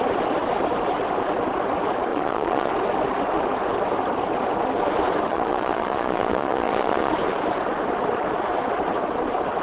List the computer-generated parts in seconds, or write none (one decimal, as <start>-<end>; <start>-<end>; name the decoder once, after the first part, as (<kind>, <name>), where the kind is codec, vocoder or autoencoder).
2.1-2.7 (vocoder, Vocos); 5.3-7.1